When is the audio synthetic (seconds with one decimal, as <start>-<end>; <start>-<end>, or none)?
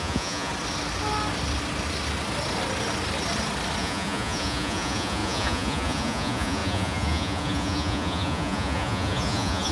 0.0-0.5; 3.8-9.7